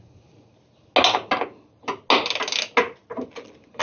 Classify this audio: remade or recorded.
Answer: recorded